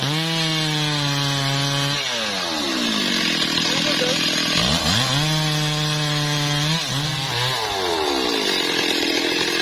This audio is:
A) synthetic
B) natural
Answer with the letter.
B